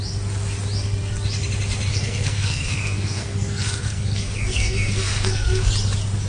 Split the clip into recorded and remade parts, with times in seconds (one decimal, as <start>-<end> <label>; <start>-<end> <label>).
0.0-1.9 recorded; 1.9-5.7 remade; 5.7-6.3 recorded